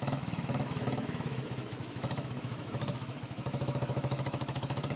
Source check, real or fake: fake